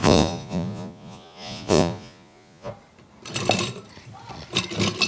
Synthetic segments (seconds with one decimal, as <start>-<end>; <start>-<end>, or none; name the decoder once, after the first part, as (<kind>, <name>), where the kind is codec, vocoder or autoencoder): 0.0-2.7 (vocoder, Vocos)